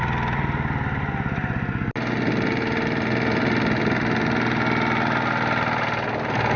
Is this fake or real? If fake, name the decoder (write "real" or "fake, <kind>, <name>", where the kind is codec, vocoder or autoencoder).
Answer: real